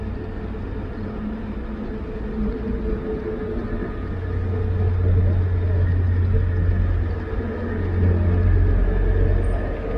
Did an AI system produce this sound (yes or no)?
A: no